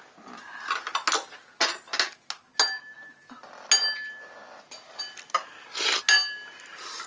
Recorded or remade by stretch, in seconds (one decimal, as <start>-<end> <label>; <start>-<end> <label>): 0.0-7.1 recorded